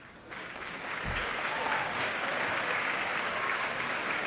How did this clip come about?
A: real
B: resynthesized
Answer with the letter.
B